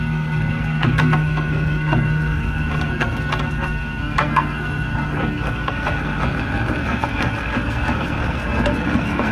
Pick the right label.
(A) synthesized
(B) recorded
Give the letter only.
A